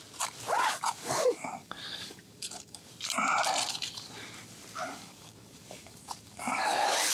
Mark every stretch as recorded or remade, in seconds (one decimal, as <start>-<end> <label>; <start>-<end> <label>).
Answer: 0.0-0.6 recorded; 0.6-2.9 remade; 2.9-4.9 recorded; 4.9-7.1 remade